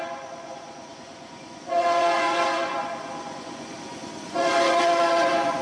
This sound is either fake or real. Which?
fake